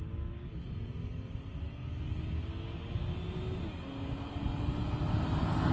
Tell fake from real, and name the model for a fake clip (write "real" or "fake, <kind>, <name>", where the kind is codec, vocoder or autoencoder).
real